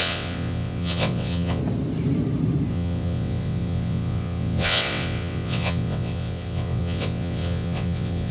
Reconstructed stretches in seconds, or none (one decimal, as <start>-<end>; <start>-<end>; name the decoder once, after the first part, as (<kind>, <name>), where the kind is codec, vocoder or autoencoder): 0.0-1.6 (vocoder, WaveNeXt); 2.7-8.3